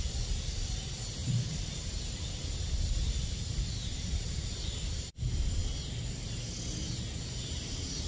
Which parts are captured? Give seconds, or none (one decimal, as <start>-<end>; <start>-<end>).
5.6-7.2